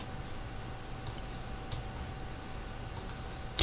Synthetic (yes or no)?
no